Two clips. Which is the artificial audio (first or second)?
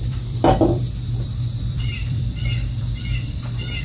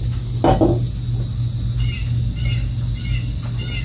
first